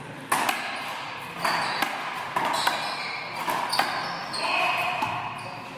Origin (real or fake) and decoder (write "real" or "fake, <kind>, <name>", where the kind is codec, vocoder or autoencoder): real